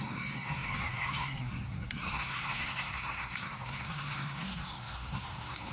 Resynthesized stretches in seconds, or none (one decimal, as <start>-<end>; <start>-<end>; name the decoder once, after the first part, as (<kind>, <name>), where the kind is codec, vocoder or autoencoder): 0.0-5.7 (codec, SNAC)